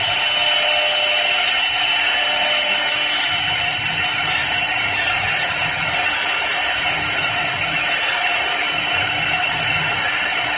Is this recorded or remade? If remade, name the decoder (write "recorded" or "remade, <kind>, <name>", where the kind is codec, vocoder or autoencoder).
recorded